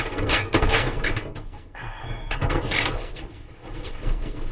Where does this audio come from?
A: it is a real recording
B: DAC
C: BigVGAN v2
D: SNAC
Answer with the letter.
D